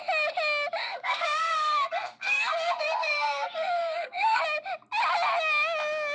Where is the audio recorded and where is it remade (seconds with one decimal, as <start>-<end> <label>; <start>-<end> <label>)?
0.0-0.8 recorded; 0.8-4.4 remade; 4.4-6.1 recorded

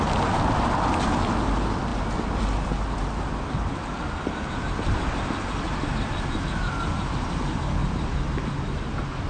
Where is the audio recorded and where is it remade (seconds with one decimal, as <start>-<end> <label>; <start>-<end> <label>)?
0.0-9.3 recorded

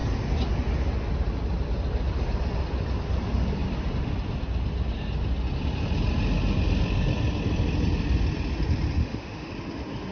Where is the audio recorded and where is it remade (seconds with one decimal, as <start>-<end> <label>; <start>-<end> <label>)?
0.0-9.0 recorded; 9.0-9.5 remade; 9.5-10.1 recorded

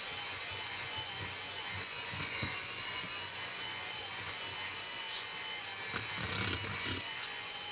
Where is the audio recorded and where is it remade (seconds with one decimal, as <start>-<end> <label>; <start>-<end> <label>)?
0.0-5.7 remade; 5.7-6.7 recorded; 6.7-7.7 remade

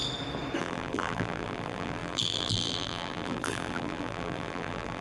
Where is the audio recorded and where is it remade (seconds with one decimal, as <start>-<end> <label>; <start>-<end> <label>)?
0.0-0.6 recorded; 0.6-5.0 remade

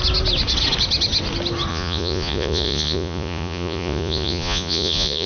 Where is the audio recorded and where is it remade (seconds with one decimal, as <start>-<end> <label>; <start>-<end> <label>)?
0.0-1.7 recorded; 1.7-5.3 remade

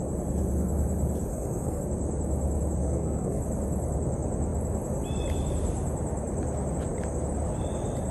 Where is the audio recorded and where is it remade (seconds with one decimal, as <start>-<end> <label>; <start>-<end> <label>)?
0.0-1.3 recorded; 1.3-1.8 remade; 1.8-2.8 recorded; 2.8-3.4 remade; 3.4-8.1 recorded